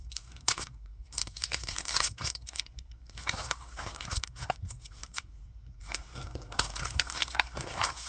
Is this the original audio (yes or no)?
no